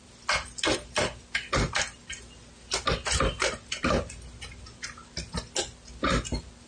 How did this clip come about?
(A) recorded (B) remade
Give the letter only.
A